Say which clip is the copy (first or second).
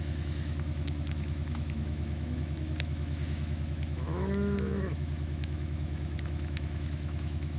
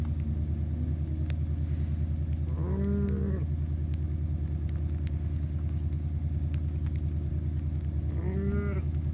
first